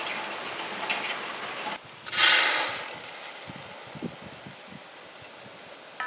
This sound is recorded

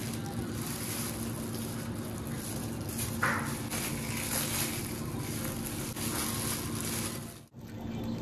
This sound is recorded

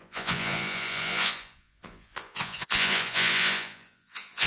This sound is remade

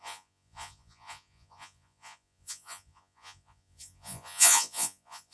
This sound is remade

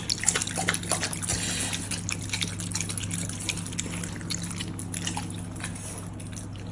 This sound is recorded